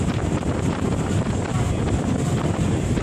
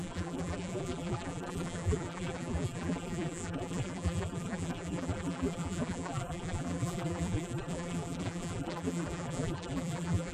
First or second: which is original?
first